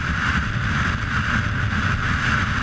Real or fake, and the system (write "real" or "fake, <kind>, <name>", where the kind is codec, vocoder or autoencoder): real